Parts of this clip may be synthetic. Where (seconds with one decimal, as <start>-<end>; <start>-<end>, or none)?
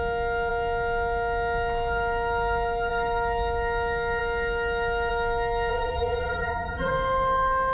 5.7-6.9